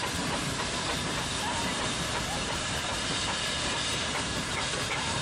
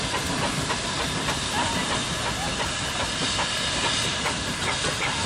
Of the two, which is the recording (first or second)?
second